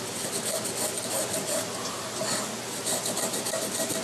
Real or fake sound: real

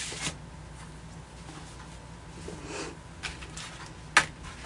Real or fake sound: real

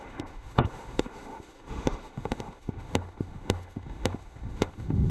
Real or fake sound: fake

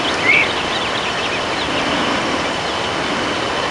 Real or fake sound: real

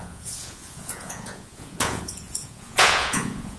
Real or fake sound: fake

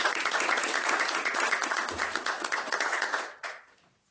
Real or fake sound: fake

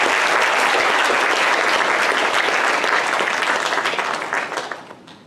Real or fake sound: real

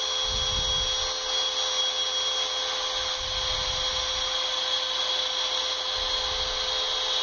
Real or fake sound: real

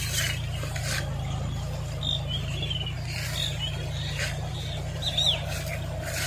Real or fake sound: real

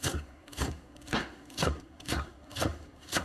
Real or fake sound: fake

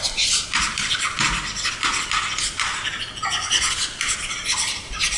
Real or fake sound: real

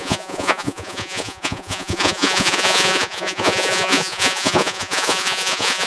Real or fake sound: fake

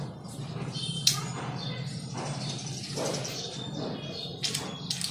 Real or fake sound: real